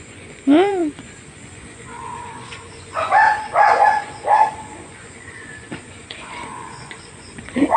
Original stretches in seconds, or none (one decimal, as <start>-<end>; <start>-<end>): none